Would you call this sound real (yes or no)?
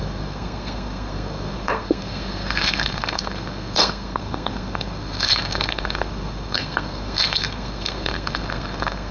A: no